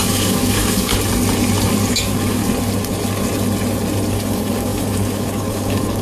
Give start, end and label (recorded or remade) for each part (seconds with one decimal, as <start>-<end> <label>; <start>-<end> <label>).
0.0-0.9 remade; 0.9-1.9 recorded; 1.9-2.4 remade; 2.4-4.1 recorded; 4.1-6.0 remade